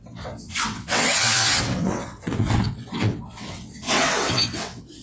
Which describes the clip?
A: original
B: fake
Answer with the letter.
B